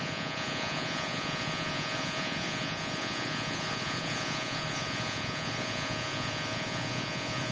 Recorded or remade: remade